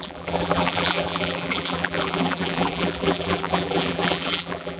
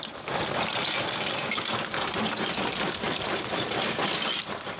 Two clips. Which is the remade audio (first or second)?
first